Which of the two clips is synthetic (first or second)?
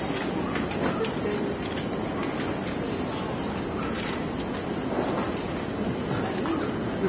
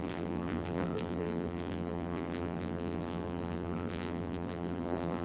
second